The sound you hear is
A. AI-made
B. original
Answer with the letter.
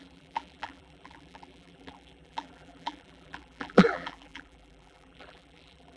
A